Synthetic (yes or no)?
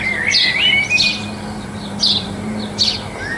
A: no